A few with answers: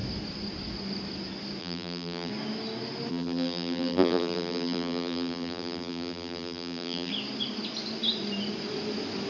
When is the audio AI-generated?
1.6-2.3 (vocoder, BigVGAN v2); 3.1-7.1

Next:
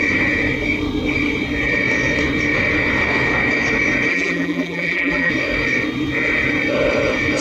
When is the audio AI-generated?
4.1-5.3 (vocoder, BigVGAN v2)

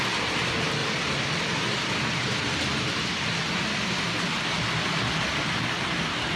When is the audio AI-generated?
none

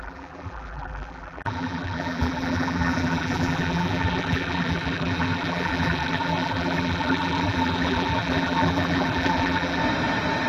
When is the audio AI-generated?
0.0-9.8 (vocoder, BigVGAN v2)

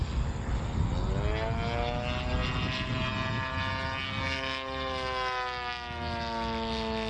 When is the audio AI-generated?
none